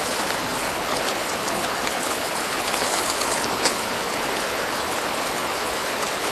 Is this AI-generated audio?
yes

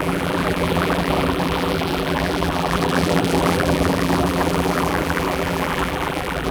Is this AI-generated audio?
yes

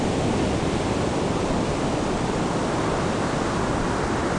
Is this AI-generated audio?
no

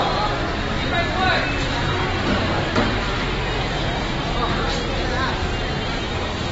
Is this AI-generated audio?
no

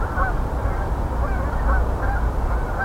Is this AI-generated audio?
no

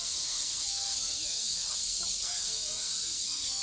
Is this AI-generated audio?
yes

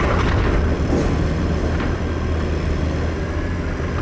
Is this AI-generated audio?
no